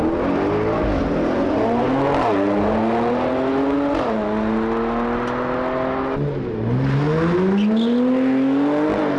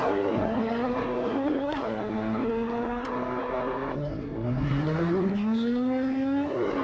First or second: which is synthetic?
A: second